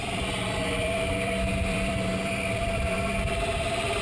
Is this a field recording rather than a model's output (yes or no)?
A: no